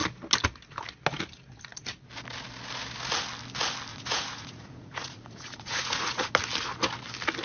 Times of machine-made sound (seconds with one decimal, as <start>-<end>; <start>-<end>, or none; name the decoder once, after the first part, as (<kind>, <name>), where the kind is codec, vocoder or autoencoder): 3.9-6.3 (vocoder, Vocos)